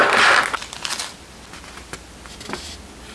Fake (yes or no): no